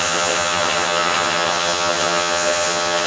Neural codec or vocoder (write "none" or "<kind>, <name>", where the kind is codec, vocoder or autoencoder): vocoder, HiFi-GAN